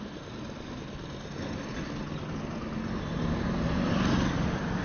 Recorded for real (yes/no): yes